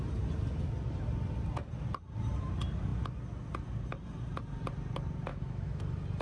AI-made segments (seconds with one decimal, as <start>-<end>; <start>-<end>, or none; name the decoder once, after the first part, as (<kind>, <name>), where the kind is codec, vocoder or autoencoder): 5.3-5.8 (autoencoder, DAC-VAE)